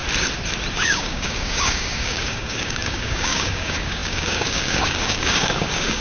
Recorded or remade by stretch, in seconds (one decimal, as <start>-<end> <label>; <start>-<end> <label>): 0.0-0.7 recorded; 0.7-6.0 remade